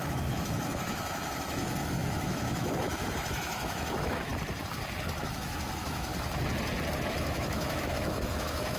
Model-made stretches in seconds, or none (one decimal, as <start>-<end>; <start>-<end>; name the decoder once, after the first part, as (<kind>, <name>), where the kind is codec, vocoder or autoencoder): 0.0-4.3 (autoencoder, DAC-VAE); 5.2-6.1; 7.1-8.8